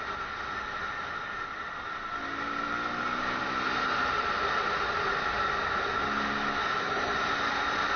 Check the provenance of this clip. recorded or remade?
recorded